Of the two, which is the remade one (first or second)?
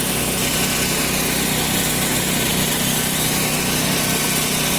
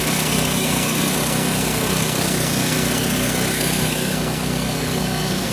second